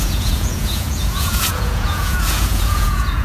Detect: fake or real fake